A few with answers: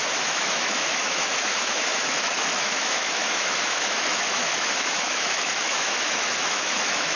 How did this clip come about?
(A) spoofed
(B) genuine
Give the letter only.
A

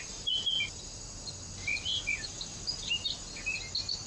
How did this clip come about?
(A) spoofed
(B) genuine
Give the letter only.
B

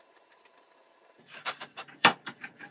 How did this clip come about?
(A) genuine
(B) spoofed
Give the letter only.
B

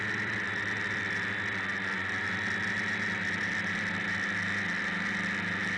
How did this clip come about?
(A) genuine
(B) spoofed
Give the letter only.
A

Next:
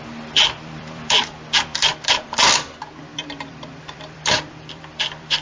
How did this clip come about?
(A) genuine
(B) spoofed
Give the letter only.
B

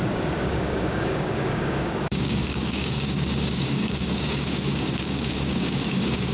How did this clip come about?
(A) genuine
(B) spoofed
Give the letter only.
B